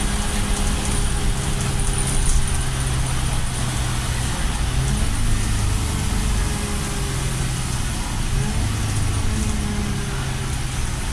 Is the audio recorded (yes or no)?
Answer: yes